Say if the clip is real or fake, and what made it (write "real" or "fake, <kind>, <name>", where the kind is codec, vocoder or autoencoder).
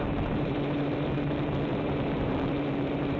fake, vocoder, BigVGAN v2